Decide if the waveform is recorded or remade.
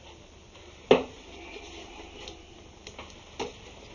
recorded